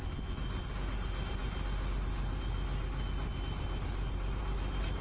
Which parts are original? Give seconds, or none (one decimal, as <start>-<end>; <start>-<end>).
0.0-5.0